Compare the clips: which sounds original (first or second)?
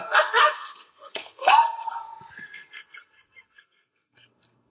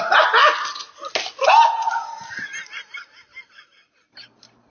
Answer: second